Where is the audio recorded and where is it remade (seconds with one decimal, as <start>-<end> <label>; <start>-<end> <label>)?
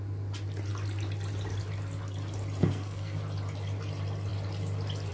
0.0-2.6 recorded; 2.6-3.2 remade; 3.2-5.1 recorded